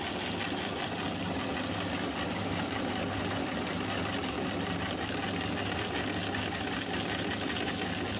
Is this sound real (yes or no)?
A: yes